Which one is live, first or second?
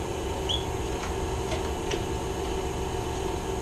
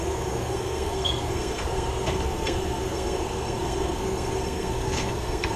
first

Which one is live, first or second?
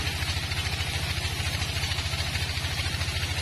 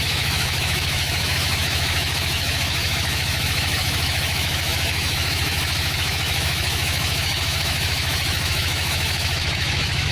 first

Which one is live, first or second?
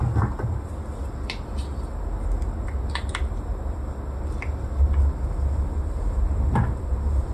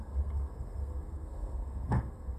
first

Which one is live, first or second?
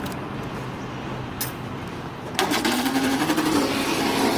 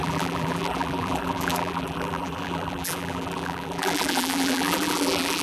first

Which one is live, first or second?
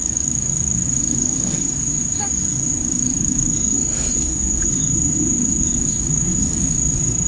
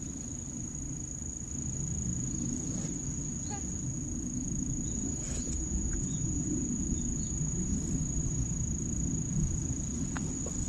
second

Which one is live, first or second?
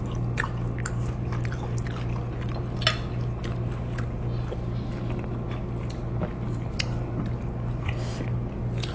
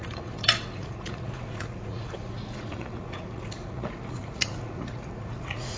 first